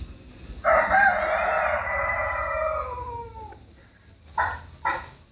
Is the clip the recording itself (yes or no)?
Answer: yes